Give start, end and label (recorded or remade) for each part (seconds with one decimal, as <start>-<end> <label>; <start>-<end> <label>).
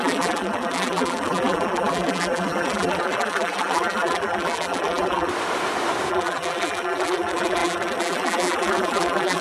0.0-5.3 remade; 5.3-6.1 recorded; 6.1-9.4 remade